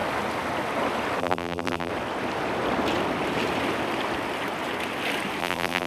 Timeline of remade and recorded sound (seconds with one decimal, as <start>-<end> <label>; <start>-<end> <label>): 0.0-1.2 recorded; 1.2-1.9 remade; 1.9-5.4 recorded; 5.4-5.9 remade